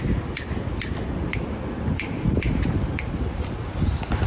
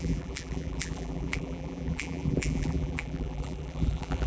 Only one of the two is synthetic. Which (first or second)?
second